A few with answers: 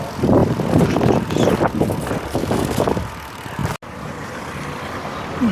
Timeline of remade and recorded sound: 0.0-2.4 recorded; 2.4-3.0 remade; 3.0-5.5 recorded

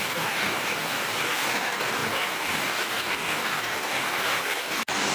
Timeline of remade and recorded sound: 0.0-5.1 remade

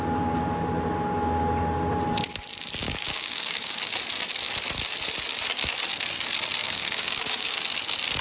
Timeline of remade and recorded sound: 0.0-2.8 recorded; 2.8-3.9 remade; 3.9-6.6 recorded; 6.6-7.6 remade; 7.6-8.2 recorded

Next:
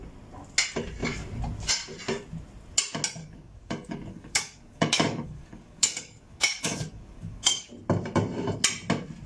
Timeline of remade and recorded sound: 0.0-3.2 recorded; 3.2-7.7 remade; 7.7-9.3 recorded

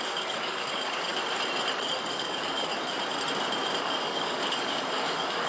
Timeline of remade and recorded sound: 0.0-1.1 remade; 1.1-2.1 recorded; 2.1-2.7 remade; 2.7-3.8 recorded; 3.8-5.5 remade

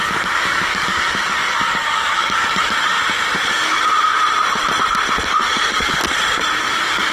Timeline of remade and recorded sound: 0.0-2.9 remade; 2.9-3.5 recorded; 3.5-3.9 remade; 3.9-5.3 recorded; 5.3-6.0 remade; 6.0-6.6 recorded; 6.6-7.1 remade

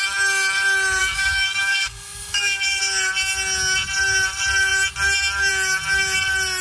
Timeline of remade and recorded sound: 0.0-1.0 recorded; 1.0-2.8 remade; 2.8-6.6 recorded

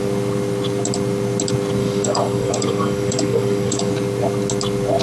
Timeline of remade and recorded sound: 0.0-1.8 recorded; 1.8-3.9 remade; 3.9-5.0 recorded